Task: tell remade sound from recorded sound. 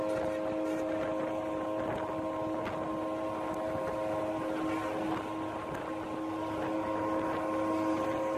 recorded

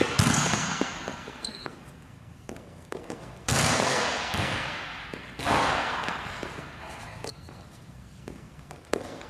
remade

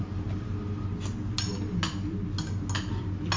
recorded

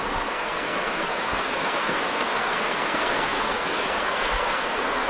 remade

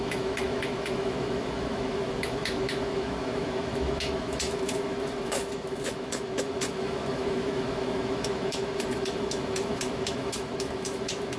remade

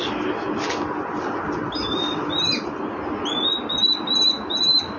recorded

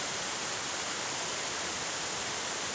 remade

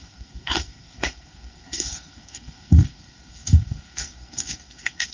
remade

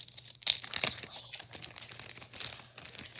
recorded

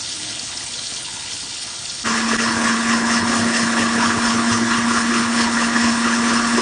remade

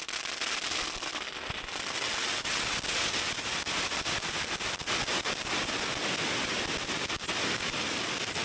recorded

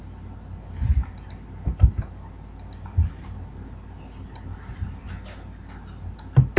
recorded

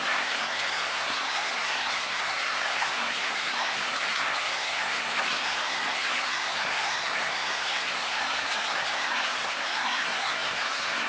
remade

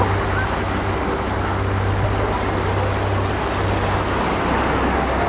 recorded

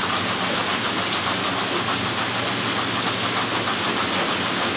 recorded